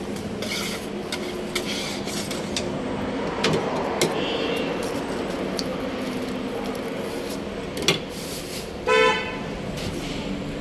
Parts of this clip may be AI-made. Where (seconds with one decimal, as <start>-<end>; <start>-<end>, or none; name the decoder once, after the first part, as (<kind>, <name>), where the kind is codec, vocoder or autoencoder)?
none